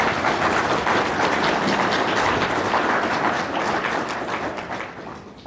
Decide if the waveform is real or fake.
real